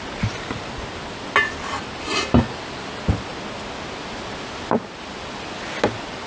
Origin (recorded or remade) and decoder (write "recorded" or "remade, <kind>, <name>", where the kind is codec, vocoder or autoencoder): recorded